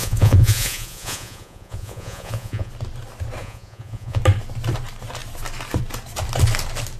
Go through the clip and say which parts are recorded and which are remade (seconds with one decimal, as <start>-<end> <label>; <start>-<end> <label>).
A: 0.0-2.7 remade; 2.7-3.4 recorded; 3.4-4.2 remade; 4.2-7.0 recorded